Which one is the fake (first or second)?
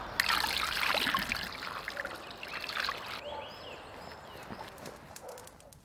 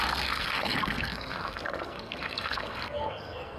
second